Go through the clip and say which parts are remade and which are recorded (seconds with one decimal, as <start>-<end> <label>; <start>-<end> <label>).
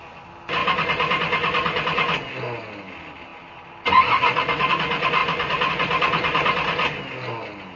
0.0-7.8 recorded